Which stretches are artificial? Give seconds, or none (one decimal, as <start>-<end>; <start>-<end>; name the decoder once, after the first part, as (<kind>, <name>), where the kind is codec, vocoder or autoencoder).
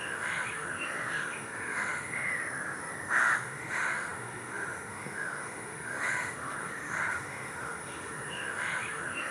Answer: 0.0-2.4 (autoencoder, DAC-VAE); 2.9-9.3